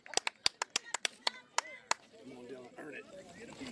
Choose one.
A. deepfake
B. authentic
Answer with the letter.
B